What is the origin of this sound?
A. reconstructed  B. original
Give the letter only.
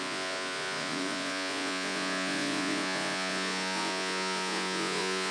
A